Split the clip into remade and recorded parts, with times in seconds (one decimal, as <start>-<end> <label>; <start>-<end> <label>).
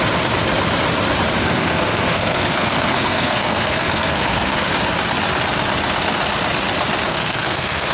0.0-1.4 recorded; 1.4-4.7 remade; 4.7-7.1 recorded; 7.1-7.9 remade